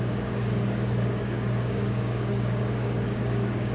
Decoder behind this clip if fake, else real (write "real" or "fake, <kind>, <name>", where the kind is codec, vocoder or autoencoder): fake, codec, DAC